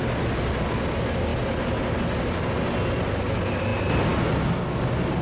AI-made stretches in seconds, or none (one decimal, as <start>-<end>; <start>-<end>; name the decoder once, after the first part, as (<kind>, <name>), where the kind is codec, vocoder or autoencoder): 1.3-2.2 (vocoder, BigVGAN v2)